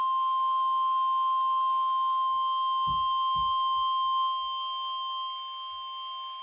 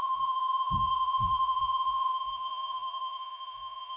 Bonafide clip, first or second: first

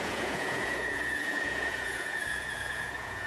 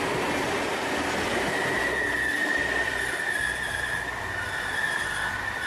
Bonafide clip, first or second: second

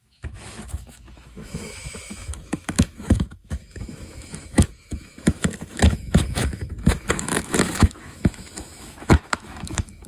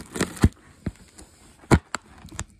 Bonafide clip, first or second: second